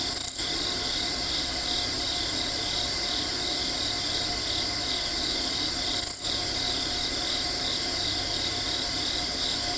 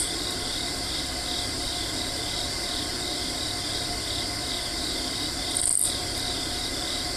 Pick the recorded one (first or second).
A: first